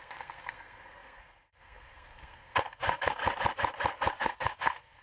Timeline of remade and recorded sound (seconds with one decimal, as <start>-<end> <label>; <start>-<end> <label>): 0.0-3.2 remade; 3.2-4.1 recorded; 4.1-5.0 remade